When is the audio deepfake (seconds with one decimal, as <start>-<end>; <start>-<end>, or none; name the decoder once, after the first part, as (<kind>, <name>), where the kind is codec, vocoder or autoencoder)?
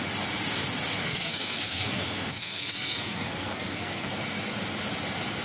1.0-4.1 (codec, SNAC)